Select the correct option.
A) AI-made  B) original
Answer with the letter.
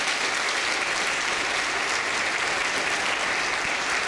B